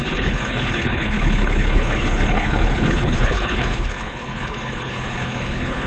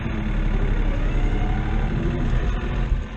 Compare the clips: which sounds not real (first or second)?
first